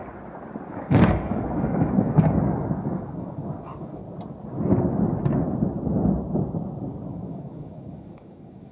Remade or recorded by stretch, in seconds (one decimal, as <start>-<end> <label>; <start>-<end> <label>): 0.0-0.7 recorded; 0.7-4.0 remade; 4.0-7.1 recorded; 7.1-8.7 remade